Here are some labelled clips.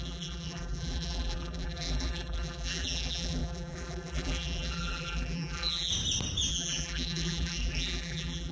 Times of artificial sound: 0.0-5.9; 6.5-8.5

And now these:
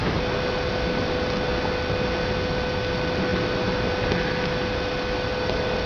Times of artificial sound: 0.7-1.5; 2.7-5.9

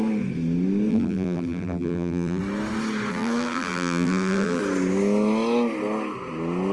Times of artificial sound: 0.9-2.4; 3.1-4.6

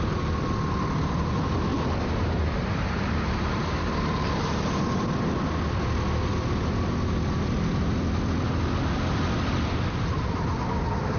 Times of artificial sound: 1.7-4.4

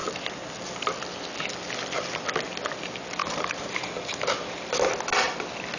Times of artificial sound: 0.0-0.7; 3.2-4.2

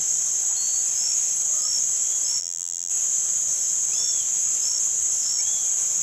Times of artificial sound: 2.4-2.9

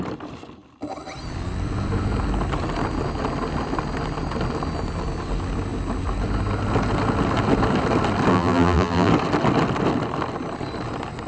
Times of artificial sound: 8.3-9.1